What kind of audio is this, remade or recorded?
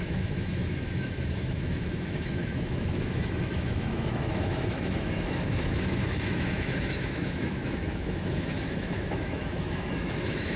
remade